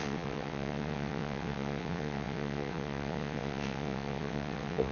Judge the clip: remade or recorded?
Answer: remade